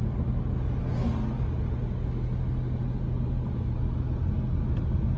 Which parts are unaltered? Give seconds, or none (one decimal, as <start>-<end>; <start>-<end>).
0.0-5.2